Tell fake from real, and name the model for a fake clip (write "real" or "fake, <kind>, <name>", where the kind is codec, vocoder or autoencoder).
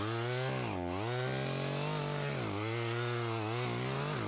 real